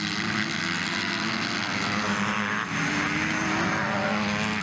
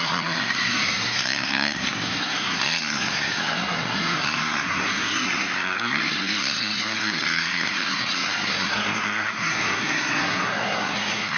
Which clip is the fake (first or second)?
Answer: second